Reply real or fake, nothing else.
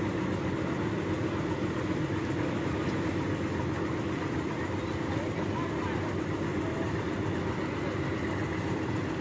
real